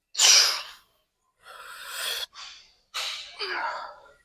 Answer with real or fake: real